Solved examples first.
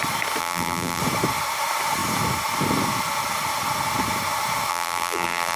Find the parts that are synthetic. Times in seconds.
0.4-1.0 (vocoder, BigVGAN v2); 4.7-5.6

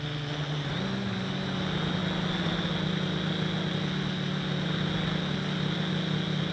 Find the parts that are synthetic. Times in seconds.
none

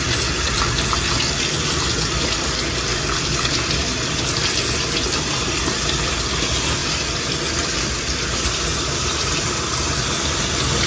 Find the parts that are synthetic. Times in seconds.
2.9-3.9 (vocoder, BigVGAN v2); 8.7-9.7